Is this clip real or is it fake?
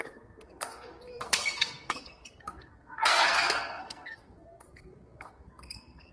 fake